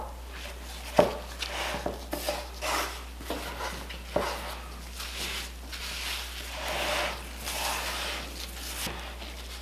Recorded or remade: recorded